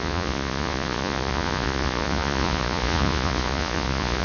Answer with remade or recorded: remade